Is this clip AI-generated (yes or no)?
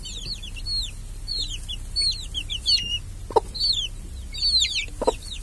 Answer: no